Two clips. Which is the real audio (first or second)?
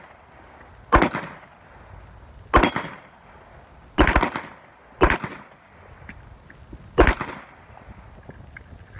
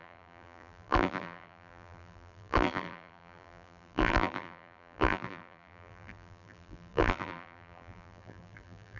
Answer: first